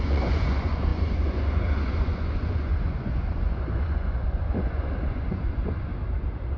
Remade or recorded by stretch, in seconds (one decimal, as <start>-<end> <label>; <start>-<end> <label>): 0.0-5.9 remade; 5.9-6.6 recorded